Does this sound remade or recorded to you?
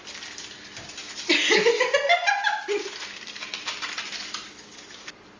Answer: recorded